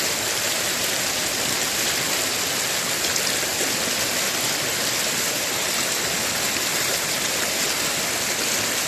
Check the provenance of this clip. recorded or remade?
recorded